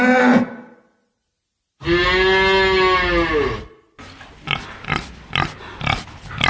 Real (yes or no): yes